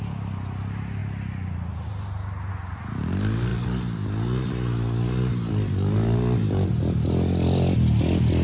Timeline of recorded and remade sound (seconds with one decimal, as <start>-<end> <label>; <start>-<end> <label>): 0.0-8.4 recorded